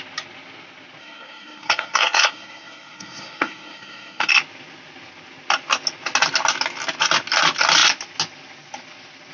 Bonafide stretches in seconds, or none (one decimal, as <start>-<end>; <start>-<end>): 0.0-1.0; 4.3-9.3